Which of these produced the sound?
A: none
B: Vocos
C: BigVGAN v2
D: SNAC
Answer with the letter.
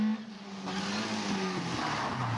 A